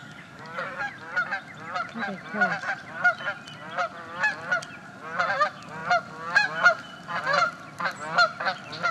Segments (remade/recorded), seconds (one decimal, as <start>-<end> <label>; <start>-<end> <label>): 0.0-0.9 remade; 0.9-8.9 recorded